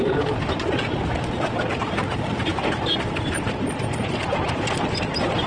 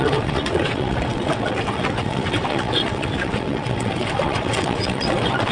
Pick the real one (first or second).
first